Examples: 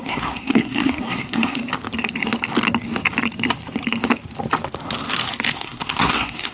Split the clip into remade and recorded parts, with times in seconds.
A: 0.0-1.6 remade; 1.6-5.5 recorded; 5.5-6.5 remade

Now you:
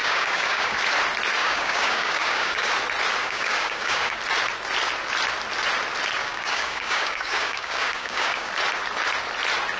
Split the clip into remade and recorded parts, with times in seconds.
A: 0.0-0.8 remade; 0.8-1.4 recorded; 1.4-2.7 remade; 2.7-3.2 recorded; 3.2-4.2 remade; 4.2-6.2 recorded; 6.2-8.5 remade; 8.5-9.8 recorded

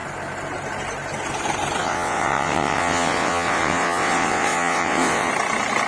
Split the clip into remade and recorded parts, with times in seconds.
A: 0.0-1.8 recorded; 1.8-5.3 remade; 5.3-5.9 recorded

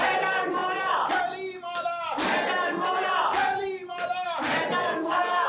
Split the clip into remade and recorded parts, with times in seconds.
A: 0.0-4.8 recorded; 4.8-5.5 remade